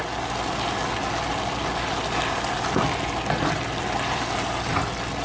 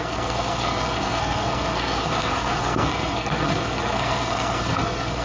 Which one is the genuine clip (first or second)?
first